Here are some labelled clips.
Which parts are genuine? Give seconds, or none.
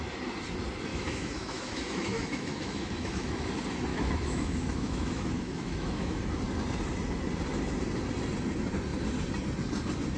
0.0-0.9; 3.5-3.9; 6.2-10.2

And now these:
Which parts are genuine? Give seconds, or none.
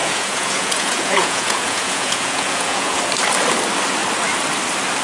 3.0-5.0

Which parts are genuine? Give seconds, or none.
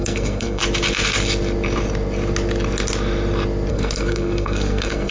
0.6-3.7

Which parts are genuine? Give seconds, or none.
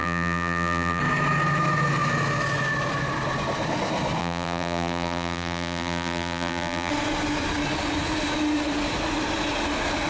1.0-4.2; 6.9-10.1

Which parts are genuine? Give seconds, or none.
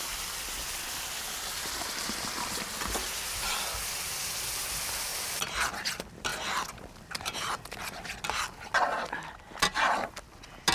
0.0-5.1; 5.7-10.7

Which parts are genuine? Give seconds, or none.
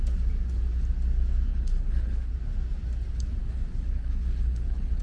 0.0-1.5; 2.3-3.4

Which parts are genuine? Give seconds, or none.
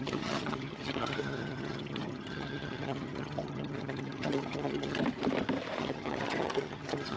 5.0-5.8